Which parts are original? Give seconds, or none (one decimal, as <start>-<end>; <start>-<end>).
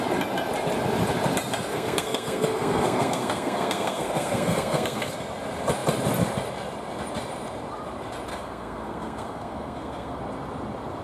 0.0-1.7; 5.1-8.3; 10.2-11.0